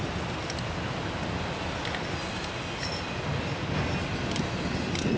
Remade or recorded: recorded